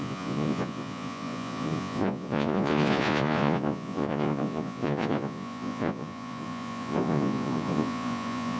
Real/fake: fake